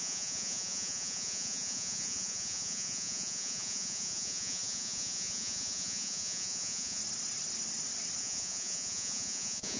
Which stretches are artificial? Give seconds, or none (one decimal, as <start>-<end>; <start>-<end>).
0.0-7.0; 8.2-9.8